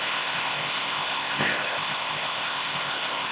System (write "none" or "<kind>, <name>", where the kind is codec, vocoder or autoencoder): codec, ZipCodec